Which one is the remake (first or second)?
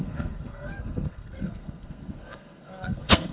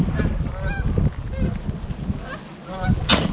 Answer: first